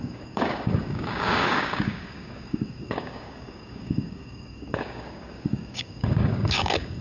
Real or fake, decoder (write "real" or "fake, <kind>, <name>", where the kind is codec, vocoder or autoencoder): fake, codec, DAC